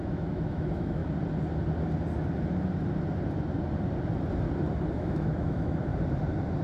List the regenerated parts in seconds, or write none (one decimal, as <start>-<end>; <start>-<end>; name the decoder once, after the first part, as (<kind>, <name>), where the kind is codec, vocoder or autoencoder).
0.0-1.0 (autoencoder, DAC-VAE); 4.9-5.9